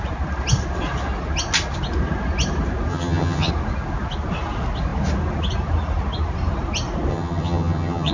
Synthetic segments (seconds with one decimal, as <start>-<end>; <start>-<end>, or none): 2.9-3.5; 7.1-8.1